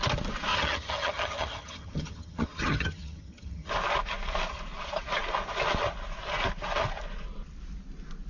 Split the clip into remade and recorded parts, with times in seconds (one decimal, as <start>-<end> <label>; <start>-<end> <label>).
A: 0.0-0.5 recorded; 0.5-3.7 remade; 3.7-8.3 recorded